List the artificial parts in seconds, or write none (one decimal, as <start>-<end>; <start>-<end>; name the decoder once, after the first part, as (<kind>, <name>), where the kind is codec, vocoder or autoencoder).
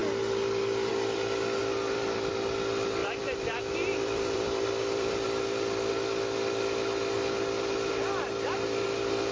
0.0-0.9 (vocoder, BigVGAN v2); 1.6-2.3; 3.0-5.9